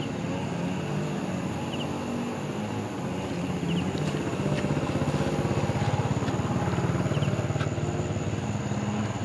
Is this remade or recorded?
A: recorded